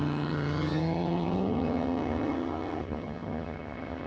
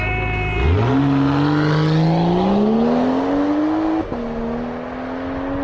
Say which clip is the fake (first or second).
first